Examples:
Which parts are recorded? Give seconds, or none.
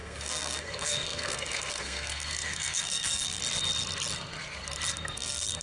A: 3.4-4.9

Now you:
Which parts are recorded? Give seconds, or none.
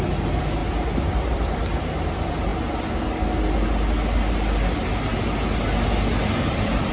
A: 0.6-1.3; 2.5-4.3; 5.1-6.4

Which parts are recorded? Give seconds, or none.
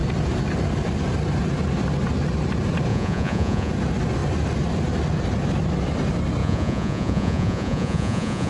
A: 0.0-2.9; 3.7-6.4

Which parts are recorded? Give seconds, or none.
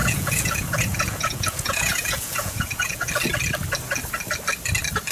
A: 3.1-5.1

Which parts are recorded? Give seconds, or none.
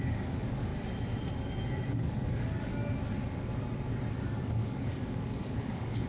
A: 0.7-1.9; 2.8-4.1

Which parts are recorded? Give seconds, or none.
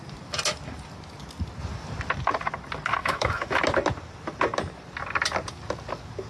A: 0.0-3.0; 3.6-6.3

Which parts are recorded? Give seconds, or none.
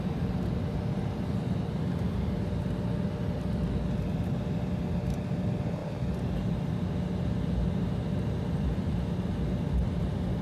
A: 0.0-10.4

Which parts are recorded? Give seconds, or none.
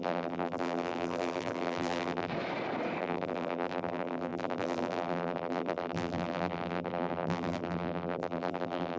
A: 2.3-3.0